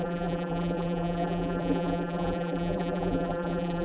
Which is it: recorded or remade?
remade